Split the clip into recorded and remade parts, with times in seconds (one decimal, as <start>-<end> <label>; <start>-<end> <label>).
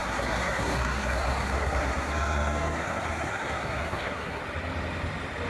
0.0-4.4 remade; 4.4-5.5 recorded